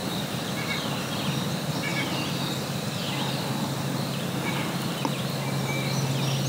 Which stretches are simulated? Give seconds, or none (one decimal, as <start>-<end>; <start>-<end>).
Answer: 0.0-1.1